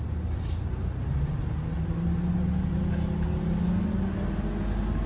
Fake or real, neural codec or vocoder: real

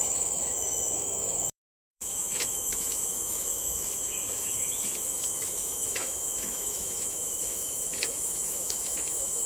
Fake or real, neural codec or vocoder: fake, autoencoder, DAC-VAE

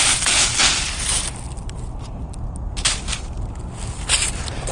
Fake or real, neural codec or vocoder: real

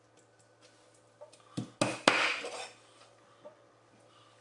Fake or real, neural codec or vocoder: real